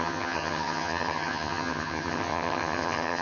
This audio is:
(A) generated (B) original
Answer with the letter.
A